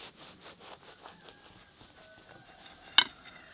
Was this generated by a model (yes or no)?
no